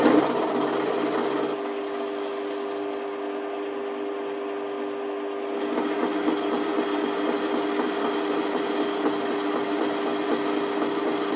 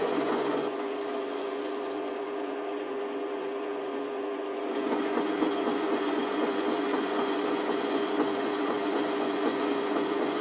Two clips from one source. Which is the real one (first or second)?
first